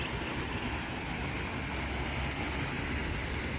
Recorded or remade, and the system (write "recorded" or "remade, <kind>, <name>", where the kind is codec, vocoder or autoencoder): recorded